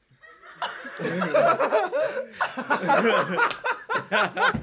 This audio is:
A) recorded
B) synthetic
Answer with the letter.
A